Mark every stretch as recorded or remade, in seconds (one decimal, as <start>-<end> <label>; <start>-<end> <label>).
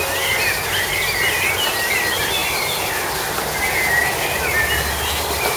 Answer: 0.0-5.6 recorded